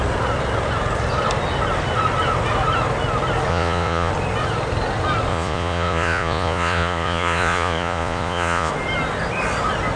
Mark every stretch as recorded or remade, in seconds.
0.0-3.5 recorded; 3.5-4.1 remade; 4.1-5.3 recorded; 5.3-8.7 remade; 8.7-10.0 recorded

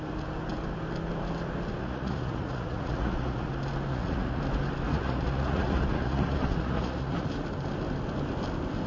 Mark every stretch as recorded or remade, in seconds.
0.0-1.8 recorded; 1.8-3.5 remade; 3.5-3.9 recorded; 3.9-4.4 remade; 4.4-4.9 recorded; 4.9-7.3 remade; 7.3-8.9 recorded

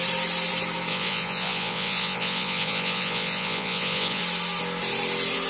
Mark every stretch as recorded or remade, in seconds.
0.0-0.9 recorded; 0.9-4.2 remade; 4.2-5.5 recorded

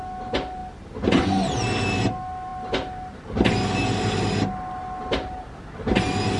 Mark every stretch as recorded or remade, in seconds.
0.0-6.4 recorded

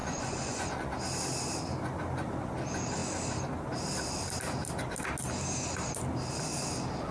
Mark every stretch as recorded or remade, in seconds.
0.0-0.9 remade; 0.9-7.1 recorded

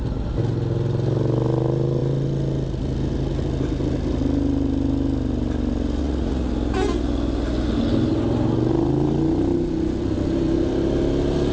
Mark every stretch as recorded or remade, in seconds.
0.0-6.0 recorded; 6.0-6.5 remade; 6.5-11.5 recorded

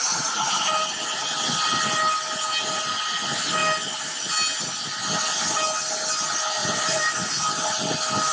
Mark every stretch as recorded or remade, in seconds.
0.0-0.6 remade; 0.6-6.6 recorded; 6.6-7.3 remade; 7.3-8.3 recorded